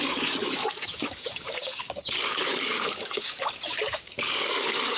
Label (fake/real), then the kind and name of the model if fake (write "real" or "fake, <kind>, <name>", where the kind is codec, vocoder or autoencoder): fake, codec, DAC